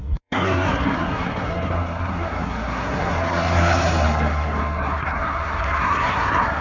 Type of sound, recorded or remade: remade